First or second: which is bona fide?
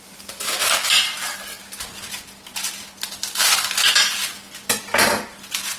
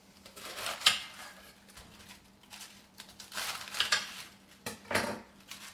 first